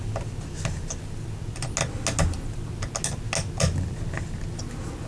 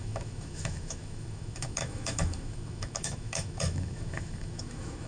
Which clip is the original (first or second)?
first